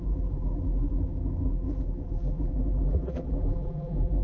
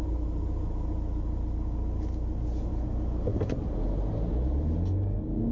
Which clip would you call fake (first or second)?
first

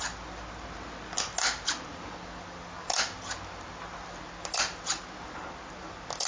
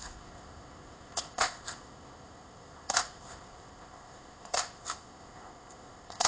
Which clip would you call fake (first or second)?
second